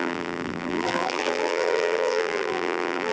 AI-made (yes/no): yes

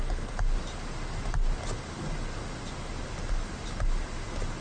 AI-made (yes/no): no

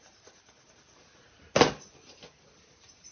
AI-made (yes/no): no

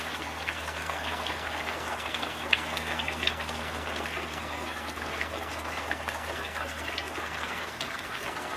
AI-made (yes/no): yes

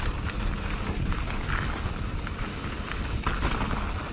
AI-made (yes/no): no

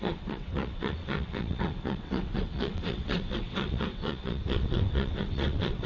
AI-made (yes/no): yes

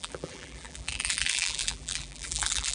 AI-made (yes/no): yes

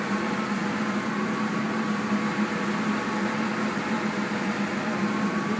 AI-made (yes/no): yes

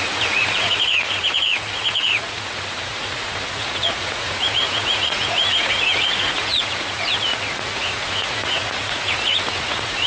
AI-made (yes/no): yes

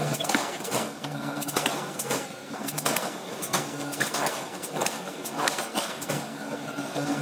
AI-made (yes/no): yes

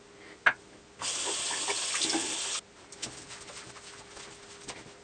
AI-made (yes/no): no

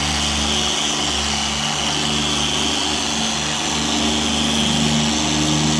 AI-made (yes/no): no